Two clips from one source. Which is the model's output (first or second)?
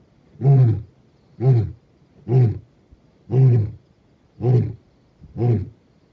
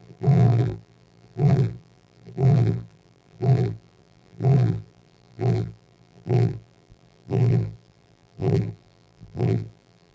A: second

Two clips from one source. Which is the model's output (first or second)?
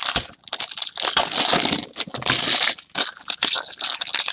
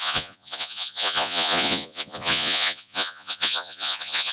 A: second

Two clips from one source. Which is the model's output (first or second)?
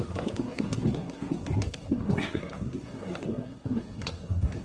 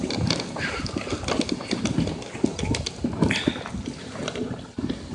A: first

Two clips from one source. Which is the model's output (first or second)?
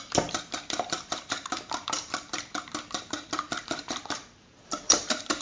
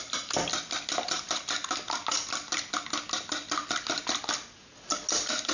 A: first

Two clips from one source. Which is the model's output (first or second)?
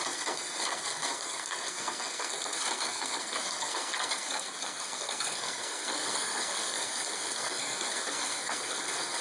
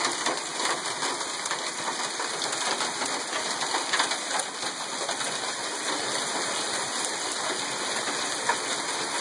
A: first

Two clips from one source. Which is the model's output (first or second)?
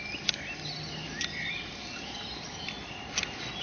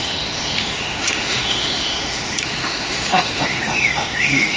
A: second